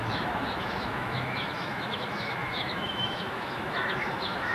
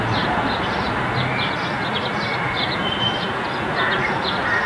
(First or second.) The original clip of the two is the second